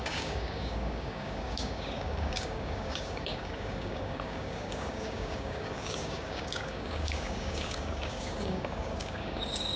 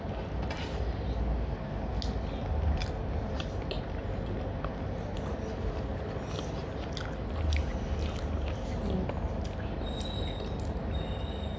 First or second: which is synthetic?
first